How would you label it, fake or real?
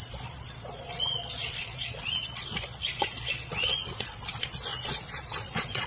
fake